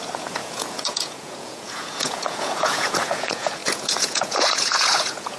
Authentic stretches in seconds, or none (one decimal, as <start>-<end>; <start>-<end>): none